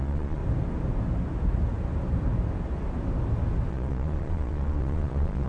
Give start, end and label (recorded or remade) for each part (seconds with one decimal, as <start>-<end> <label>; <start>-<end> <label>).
0.0-0.4 remade; 0.4-3.7 recorded; 3.7-5.5 remade